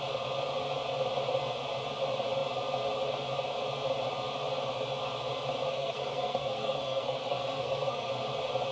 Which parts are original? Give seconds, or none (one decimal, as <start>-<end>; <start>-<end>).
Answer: 0.0-5.7; 8.1-8.7